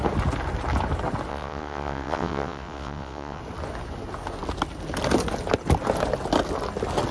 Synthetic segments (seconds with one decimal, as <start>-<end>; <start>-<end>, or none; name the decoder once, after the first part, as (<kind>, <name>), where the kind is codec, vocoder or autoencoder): 1.3-3.4 (vocoder, WaveNeXt)